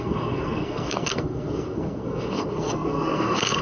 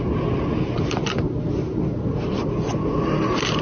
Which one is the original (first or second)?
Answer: second